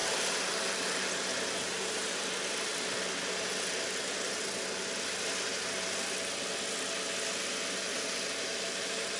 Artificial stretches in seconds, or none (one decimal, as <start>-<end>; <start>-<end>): 0.0-2.2; 7.9-9.2